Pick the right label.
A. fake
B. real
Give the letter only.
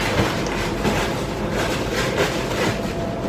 A